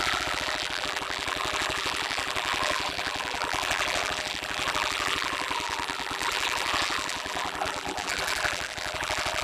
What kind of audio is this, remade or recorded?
remade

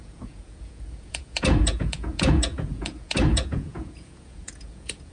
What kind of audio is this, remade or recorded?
remade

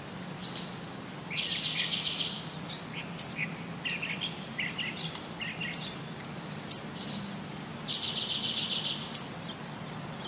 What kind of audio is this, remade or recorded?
recorded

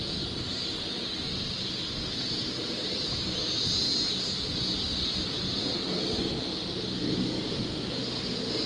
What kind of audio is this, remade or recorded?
recorded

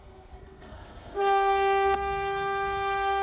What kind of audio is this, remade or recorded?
remade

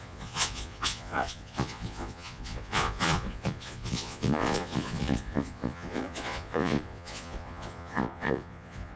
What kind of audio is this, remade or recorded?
remade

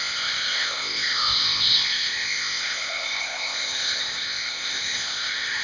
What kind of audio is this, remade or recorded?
remade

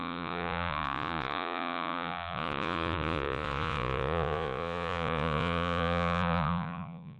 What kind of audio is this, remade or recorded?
remade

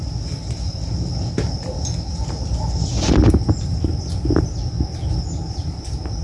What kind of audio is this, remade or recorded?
recorded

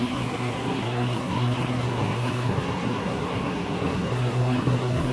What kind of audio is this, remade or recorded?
remade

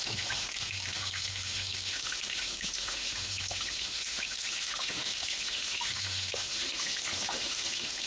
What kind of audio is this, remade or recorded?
remade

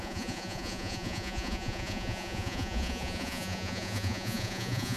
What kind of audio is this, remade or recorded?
remade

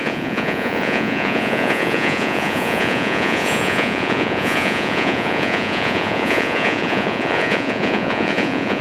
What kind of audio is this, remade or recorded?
remade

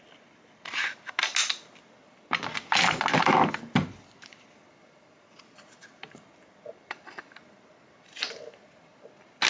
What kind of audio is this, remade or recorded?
recorded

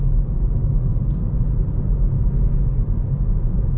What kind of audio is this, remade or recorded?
recorded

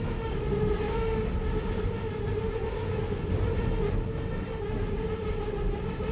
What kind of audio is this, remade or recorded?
recorded